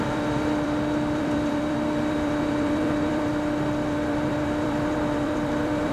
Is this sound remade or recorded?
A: remade